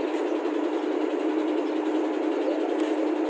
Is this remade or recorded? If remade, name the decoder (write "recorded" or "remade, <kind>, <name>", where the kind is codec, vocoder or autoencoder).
recorded